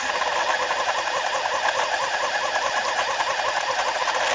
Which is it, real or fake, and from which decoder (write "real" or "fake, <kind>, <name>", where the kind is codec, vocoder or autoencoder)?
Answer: real